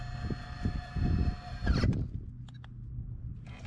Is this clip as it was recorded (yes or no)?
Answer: yes